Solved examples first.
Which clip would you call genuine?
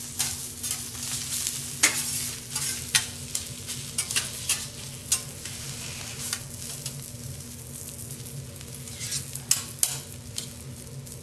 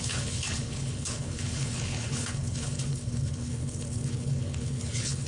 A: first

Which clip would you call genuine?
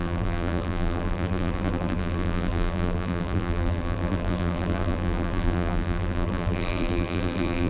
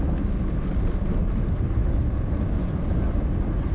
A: second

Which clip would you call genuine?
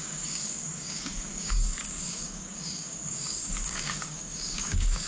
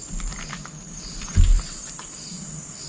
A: second